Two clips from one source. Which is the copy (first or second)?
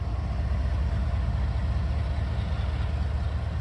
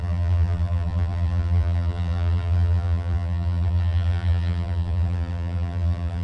second